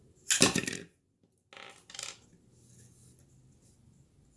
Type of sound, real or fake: real